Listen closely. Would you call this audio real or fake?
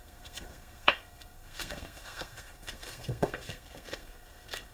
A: fake